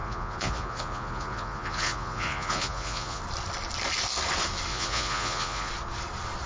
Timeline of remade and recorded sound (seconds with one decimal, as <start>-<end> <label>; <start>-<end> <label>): 0.0-3.2 remade; 3.2-4.7 recorded; 4.7-5.7 remade; 5.7-6.5 recorded